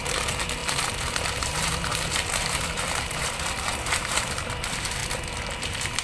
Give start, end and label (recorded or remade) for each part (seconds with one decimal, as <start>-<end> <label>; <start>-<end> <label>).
0.0-5.0 remade; 5.0-5.6 recorded; 5.6-6.0 remade

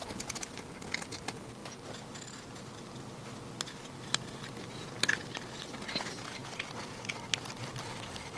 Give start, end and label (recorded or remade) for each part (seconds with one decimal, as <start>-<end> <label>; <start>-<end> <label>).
0.0-8.4 recorded